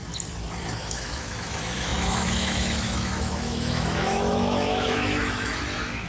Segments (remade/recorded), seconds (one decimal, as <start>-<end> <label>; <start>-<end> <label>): 0.0-0.8 recorded; 0.8-6.1 remade